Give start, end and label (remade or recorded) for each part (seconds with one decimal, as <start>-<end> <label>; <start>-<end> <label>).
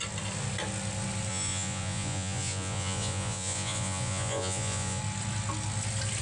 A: 0.0-1.3 recorded; 1.3-5.0 remade; 5.0-6.2 recorded